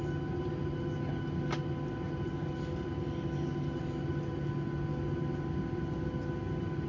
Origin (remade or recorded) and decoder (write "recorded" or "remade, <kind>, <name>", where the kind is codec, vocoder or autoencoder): recorded